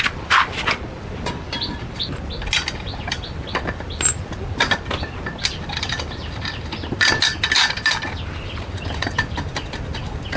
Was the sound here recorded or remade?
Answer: recorded